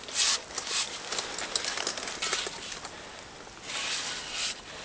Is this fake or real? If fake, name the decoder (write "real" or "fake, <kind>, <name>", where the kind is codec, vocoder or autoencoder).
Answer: real